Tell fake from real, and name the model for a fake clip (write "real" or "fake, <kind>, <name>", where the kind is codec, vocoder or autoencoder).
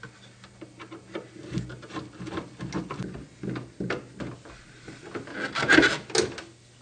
real